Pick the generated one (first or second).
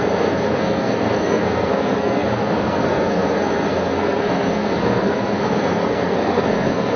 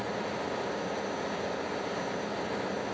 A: first